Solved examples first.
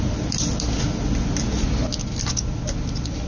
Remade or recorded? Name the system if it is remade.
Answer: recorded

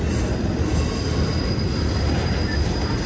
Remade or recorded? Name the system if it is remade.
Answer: recorded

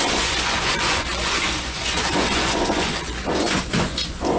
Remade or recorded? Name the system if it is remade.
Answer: remade, vocoder, Vocos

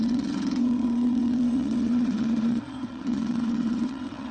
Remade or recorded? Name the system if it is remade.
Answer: remade, vocoder, WaveNeXt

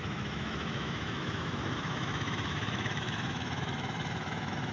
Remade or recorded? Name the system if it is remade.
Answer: remade, autoencoder, DAC-VAE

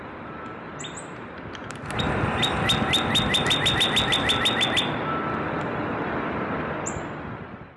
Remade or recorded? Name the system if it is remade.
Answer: recorded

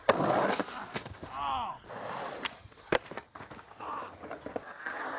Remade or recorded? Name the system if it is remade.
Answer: recorded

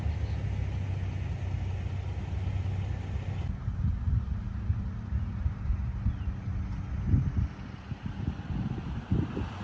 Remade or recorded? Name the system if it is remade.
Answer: recorded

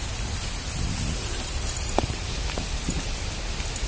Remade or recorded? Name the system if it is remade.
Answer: recorded